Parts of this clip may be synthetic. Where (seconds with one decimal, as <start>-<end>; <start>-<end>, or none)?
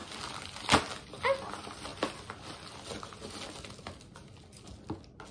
none